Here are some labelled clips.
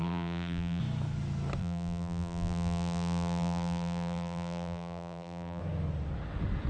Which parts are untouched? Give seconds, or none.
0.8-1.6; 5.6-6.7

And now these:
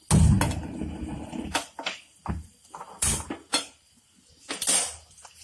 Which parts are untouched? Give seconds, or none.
0.0-1.1; 4.3-5.4